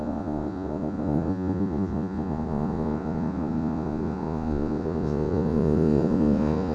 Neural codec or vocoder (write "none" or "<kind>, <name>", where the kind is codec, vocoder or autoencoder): vocoder, Vocos